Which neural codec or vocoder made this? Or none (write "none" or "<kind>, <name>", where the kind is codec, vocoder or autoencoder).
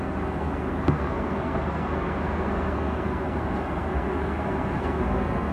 codec, SNAC